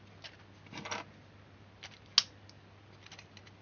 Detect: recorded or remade recorded